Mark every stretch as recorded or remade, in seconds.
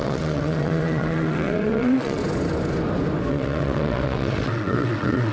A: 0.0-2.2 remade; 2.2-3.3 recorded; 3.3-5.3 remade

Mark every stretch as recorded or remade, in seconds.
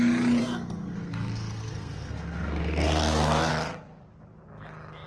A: 0.0-0.4 recorded; 0.4-3.5 remade; 3.5-5.1 recorded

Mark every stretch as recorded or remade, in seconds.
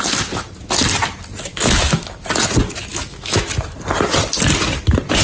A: 0.0-1.5 recorded; 1.5-2.0 remade; 2.0-2.9 recorded; 2.9-3.4 remade; 3.4-5.2 recorded